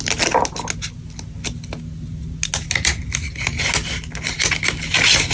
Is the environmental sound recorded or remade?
recorded